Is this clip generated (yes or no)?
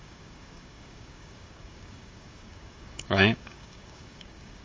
yes